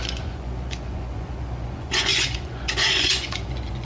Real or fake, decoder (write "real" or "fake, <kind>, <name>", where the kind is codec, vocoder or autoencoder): fake, vocoder, Vocos